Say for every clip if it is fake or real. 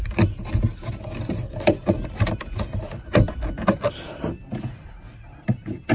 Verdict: real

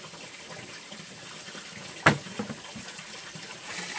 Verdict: real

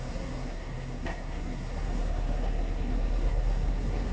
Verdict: fake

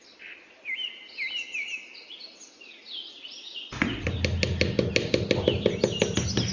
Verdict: real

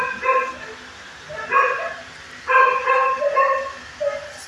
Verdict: real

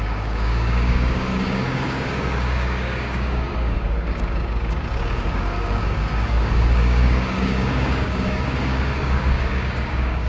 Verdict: fake